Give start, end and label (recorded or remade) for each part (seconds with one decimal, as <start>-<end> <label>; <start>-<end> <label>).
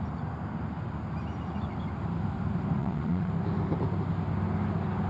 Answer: 0.0-2.8 recorded; 2.8-3.3 remade; 3.3-5.1 recorded